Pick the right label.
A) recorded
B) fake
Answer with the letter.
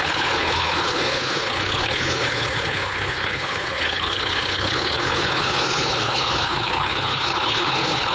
B